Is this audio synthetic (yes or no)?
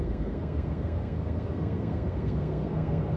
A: yes